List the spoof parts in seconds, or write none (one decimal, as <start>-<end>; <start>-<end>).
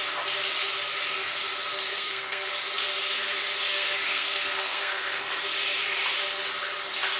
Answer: 1.9-2.5; 3.7-5.4